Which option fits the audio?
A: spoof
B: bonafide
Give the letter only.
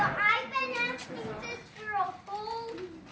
B